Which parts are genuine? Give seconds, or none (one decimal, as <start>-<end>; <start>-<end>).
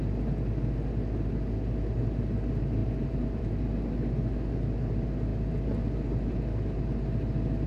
0.0-2.8; 3.6-7.7